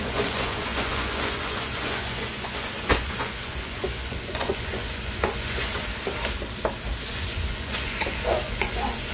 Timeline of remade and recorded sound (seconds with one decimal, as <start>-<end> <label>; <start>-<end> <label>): 0.0-5.8 remade; 5.8-7.0 recorded; 7.0-9.1 remade